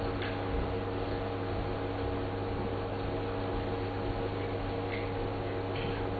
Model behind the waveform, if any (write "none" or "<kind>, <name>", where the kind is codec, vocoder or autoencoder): none